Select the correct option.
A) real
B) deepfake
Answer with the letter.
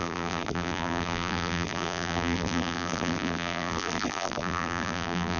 B